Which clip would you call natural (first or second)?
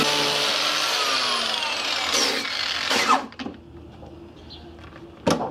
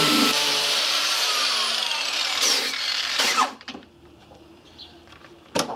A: first